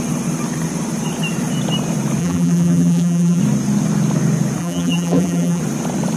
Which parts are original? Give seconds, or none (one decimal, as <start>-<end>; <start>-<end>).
0.0-2.2; 3.4-4.6; 5.6-6.2

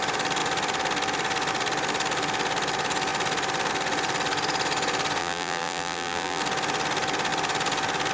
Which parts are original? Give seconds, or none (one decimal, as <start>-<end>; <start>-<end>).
0.0-5.2; 6.4-8.1